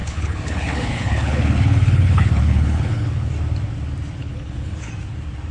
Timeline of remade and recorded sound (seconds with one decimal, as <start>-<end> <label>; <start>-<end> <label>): 0.0-3.3 remade; 3.3-4.2 recorded; 4.2-4.9 remade; 4.9-5.5 recorded